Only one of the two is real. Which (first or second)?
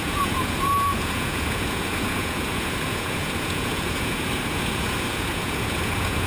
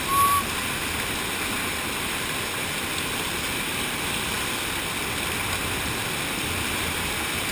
second